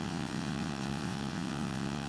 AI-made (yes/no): yes